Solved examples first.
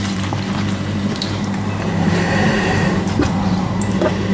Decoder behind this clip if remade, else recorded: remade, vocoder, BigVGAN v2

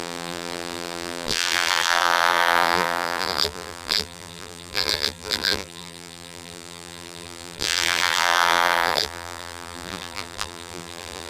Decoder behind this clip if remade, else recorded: remade, vocoder, BigVGAN v2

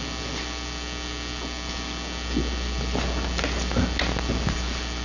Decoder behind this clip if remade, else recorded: recorded